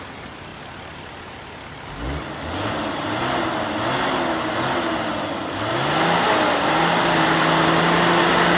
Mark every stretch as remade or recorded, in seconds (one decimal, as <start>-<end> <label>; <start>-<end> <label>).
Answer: 0.0-8.6 recorded